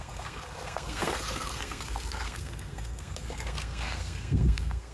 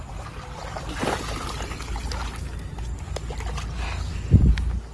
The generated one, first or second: first